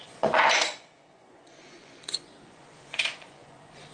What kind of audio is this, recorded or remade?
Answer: remade